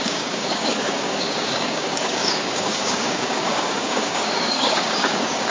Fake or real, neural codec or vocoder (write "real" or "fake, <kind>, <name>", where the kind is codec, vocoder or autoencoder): fake, codec, DAC